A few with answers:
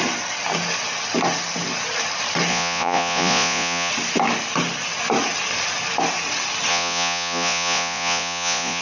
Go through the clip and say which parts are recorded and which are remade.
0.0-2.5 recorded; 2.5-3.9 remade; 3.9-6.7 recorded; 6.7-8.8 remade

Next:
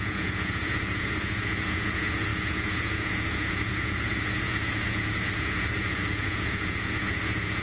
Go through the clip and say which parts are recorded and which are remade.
0.0-7.6 remade